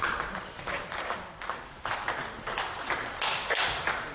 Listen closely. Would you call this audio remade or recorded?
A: remade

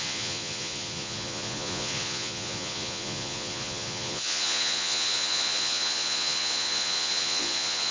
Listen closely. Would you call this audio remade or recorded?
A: remade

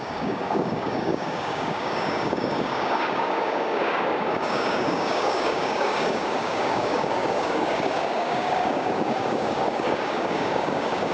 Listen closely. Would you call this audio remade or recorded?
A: remade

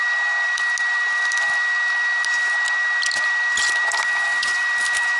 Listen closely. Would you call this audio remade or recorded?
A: recorded